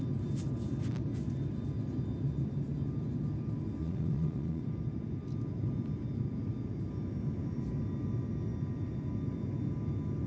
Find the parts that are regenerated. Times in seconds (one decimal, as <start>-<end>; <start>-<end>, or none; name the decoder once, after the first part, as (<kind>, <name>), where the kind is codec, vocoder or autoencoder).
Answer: 3.8-4.6 (vocoder, Vocos)